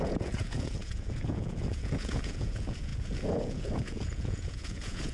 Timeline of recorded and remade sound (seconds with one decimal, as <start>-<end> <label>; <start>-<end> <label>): 0.0-5.1 remade